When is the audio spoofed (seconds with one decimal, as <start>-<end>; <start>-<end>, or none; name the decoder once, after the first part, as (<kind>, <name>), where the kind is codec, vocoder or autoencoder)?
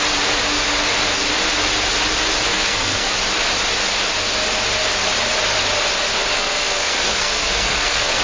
2.5-3.1 (codec, SNAC); 6.3-8.2